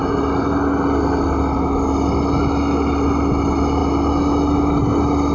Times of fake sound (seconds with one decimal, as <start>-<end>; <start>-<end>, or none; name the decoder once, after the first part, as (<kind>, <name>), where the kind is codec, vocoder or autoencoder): none